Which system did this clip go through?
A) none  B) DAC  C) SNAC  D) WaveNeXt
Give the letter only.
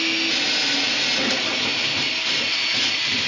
A